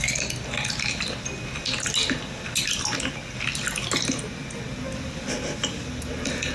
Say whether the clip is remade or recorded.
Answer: recorded